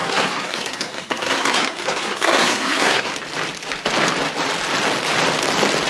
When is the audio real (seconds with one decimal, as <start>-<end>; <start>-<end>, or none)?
3.1-5.9